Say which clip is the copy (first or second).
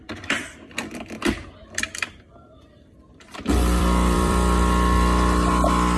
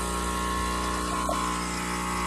first